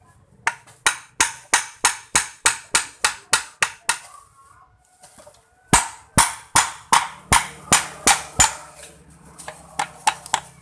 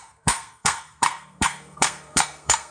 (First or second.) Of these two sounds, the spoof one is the second